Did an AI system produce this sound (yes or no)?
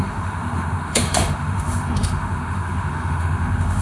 yes